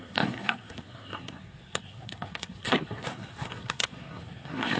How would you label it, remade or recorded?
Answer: remade